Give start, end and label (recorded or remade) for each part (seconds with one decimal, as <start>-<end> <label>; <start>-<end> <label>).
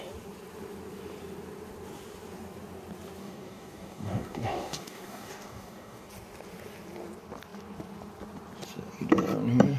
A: 0.0-3.2 recorded; 3.2-6.1 remade; 6.1-9.8 recorded